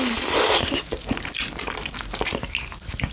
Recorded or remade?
recorded